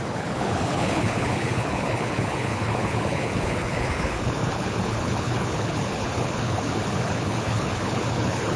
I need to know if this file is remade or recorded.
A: remade